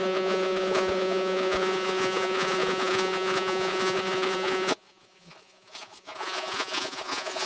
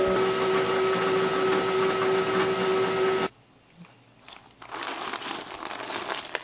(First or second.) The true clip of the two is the second